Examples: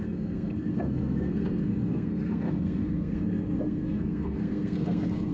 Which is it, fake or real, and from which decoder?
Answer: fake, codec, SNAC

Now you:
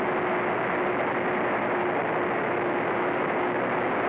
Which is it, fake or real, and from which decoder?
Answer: real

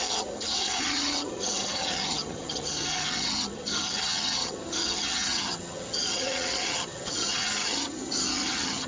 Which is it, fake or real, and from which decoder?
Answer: fake, vocoder, HiFi-GAN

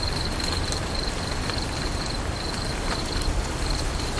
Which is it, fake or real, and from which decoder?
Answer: fake, vocoder, BigVGAN v2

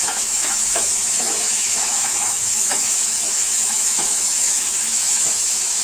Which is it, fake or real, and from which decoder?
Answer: fake, autoencoder, DAC-VAE